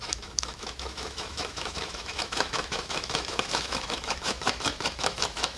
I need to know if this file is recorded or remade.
remade